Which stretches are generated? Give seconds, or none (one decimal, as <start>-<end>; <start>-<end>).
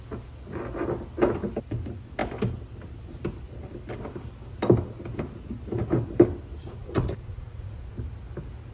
6.6-7.9